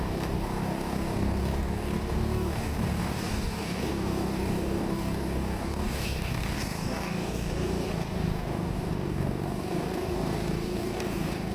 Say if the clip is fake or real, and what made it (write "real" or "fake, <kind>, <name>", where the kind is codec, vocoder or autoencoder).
fake, codec, DAC